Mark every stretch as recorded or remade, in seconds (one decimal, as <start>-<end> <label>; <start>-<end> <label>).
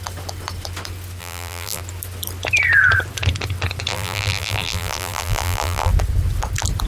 0.0-1.2 recorded; 1.2-1.8 remade; 1.8-3.9 recorded; 3.9-5.9 remade; 5.9-6.9 recorded